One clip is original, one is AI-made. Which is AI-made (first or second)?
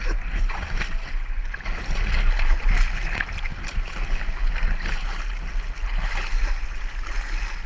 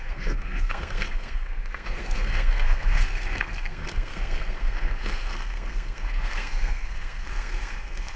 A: second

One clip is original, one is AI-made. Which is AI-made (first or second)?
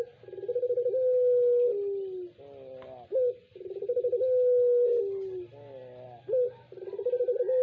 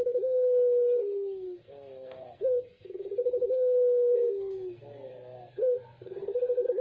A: second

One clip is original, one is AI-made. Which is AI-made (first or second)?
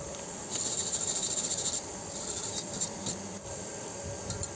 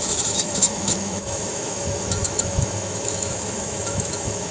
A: second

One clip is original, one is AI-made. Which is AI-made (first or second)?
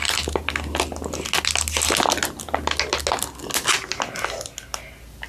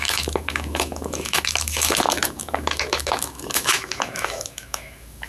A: second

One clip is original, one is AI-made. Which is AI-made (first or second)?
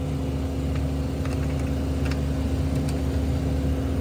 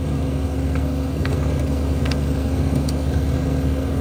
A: second